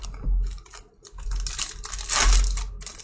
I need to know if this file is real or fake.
real